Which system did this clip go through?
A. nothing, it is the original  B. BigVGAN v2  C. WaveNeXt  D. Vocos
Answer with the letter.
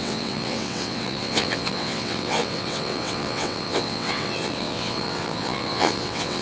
C